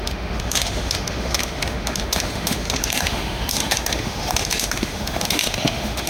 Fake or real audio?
fake